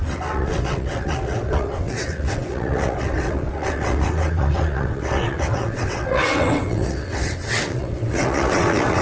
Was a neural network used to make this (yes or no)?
yes